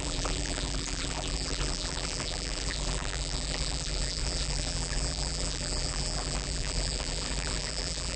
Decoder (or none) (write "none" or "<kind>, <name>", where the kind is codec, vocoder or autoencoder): vocoder, BigVGAN v2